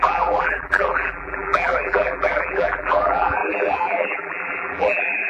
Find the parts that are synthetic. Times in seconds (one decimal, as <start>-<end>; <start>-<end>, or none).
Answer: 0.0-5.3